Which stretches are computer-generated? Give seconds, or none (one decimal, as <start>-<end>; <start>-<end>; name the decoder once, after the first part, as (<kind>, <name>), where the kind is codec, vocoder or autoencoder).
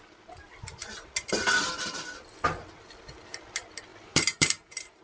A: 3.9-5.0 (vocoder, BigVGAN v2)